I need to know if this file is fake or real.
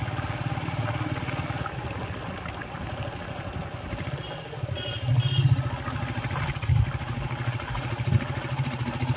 real